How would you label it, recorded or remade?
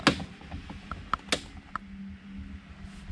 recorded